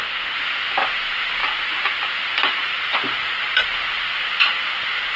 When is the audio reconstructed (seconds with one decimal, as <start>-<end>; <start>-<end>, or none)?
none